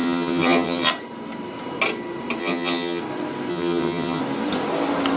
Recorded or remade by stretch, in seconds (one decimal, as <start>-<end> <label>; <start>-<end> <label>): 0.0-0.9 remade; 0.9-2.4 recorded; 2.4-3.0 remade; 3.0-3.5 recorded; 3.5-4.2 remade; 4.2-5.2 recorded